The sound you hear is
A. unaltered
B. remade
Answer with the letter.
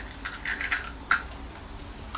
A